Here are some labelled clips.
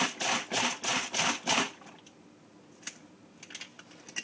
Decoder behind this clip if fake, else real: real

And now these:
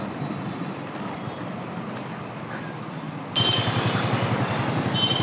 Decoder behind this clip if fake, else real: real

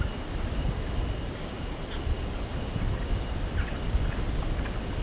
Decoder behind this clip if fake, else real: real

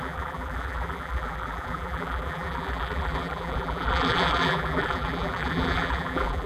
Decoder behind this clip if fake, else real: fake, vocoder, BigVGAN v2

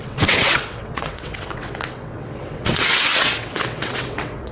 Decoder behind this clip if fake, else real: fake, vocoder, WaveNeXt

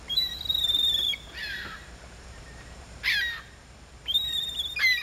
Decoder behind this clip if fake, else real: fake, vocoder, BigVGAN v2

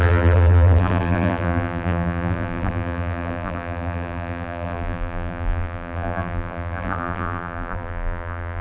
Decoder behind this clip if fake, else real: fake, vocoder, BigVGAN v2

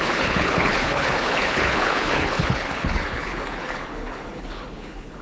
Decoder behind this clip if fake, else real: fake, codec, HILCodec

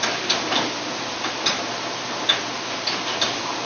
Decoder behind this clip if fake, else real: real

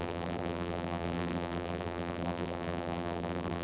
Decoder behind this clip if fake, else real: fake, vocoder, BigVGAN v2